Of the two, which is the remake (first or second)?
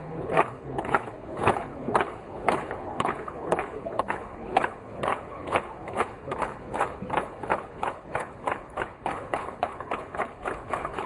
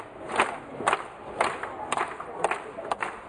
first